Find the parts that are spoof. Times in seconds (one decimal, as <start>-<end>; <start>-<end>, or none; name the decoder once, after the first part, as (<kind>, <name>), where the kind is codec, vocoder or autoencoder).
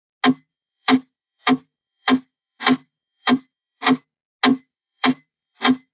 0.5-4.0 (vocoder, BigVGAN v2); 4.5-5.9